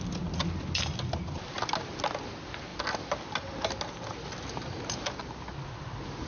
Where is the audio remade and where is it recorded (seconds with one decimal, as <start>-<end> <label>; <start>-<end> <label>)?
0.0-6.3 recorded